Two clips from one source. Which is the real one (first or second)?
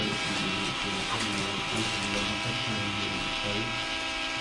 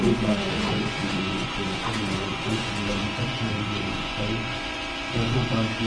first